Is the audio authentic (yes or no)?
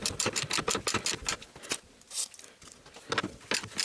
yes